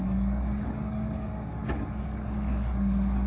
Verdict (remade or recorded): remade